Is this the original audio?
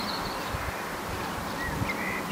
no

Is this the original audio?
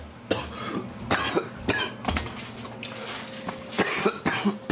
yes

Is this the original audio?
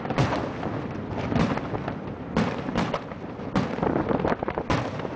yes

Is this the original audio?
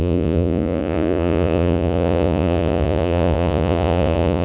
no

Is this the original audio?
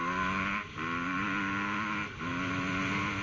yes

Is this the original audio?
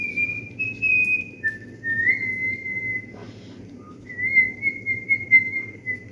yes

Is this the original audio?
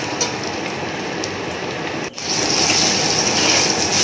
yes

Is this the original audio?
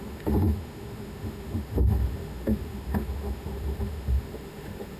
no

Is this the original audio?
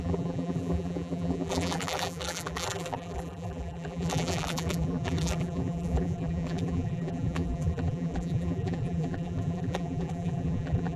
no